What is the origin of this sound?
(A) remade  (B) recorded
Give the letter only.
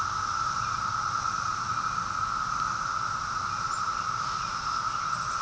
B